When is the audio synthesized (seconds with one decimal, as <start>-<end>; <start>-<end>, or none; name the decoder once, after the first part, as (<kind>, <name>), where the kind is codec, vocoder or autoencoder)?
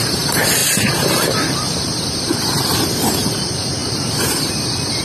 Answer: 0.0-5.0 (vocoder, BigVGAN v2)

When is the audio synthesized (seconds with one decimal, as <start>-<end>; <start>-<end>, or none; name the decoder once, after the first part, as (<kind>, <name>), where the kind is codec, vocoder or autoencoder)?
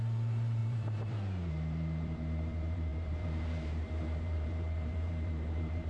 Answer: 0.0-5.9 (vocoder, BigVGAN v2)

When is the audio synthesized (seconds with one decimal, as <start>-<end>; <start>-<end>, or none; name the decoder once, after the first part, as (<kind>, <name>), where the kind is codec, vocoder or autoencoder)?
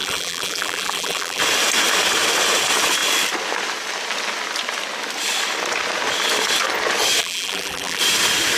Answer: 0.0-1.4 (vocoder, BigVGAN v2); 7.2-8.0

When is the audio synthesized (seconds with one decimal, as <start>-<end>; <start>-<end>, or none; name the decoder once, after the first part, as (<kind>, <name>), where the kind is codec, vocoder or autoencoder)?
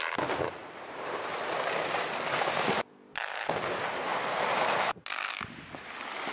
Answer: 0.6-2.8 (vocoder, BigVGAN v2); 4.1-4.7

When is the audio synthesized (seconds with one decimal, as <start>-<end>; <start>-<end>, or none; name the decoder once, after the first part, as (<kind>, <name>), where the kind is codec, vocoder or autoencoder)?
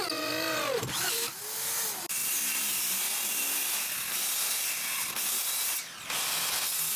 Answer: 2.2-6.1 (vocoder, BigVGAN v2)